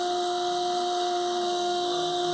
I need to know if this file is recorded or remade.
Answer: remade